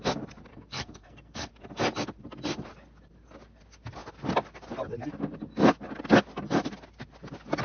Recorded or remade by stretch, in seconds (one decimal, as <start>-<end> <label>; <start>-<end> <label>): 0.0-0.5 recorded; 0.5-1.5 remade; 1.5-7.6 recorded

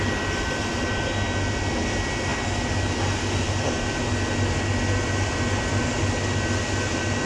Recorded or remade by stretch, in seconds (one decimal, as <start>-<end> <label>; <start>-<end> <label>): 0.0-7.3 recorded

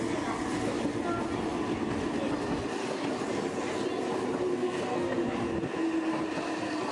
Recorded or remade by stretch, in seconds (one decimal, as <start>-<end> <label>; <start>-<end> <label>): 0.0-4.5 recorded; 4.5-5.2 remade; 5.2-6.9 recorded

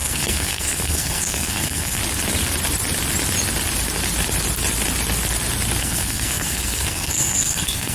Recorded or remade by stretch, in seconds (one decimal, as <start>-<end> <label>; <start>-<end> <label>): 0.0-2.0 remade; 2.0-5.8 recorded; 5.8-7.9 remade

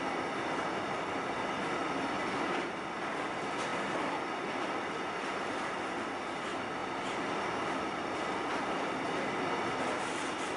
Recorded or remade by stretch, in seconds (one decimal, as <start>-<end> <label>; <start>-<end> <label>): 0.0-10.6 recorded